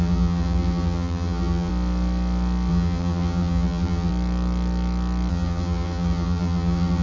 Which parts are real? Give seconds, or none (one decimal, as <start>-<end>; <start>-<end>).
1.7-2.7; 4.1-5.3